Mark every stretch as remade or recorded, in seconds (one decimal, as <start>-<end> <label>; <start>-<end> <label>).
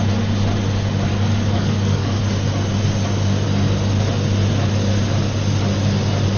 0.0-1.1 recorded; 1.1-2.2 remade; 2.2-6.4 recorded